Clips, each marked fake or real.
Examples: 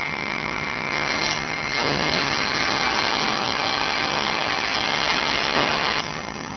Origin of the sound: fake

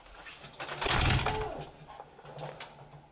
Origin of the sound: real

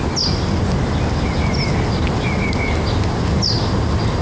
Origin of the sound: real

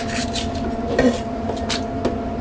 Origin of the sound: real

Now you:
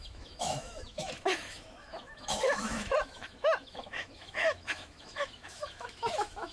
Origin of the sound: fake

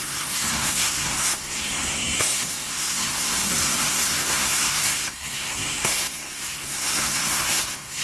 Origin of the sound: fake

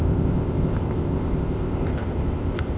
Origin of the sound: fake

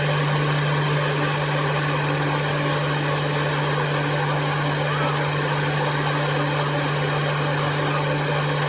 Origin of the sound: real